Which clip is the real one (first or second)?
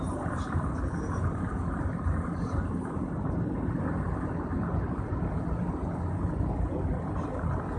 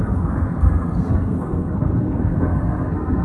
first